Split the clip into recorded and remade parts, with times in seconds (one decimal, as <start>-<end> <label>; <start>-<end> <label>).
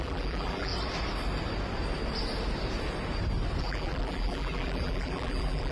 0.0-0.7 remade; 0.7-3.6 recorded; 3.6-5.7 remade